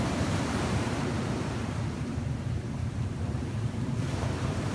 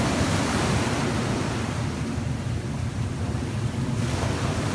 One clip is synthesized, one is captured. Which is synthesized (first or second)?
first